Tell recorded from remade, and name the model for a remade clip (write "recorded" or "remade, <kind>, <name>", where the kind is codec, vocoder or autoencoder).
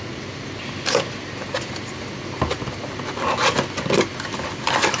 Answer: recorded